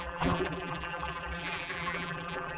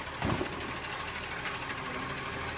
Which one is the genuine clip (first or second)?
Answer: second